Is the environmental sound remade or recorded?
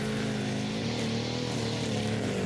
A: recorded